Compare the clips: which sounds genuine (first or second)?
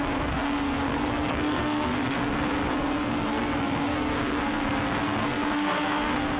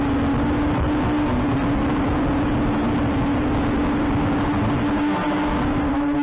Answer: second